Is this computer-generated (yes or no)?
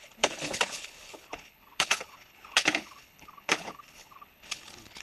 yes